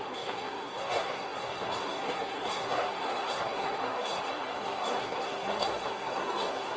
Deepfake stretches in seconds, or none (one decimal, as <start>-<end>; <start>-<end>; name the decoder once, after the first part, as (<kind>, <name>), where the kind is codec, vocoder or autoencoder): 0.0-6.8 (codec, SNAC)